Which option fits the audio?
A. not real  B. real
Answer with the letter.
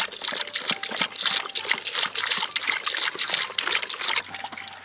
B